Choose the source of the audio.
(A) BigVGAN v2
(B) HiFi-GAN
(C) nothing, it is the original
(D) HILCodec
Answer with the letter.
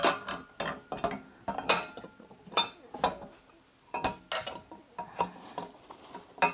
C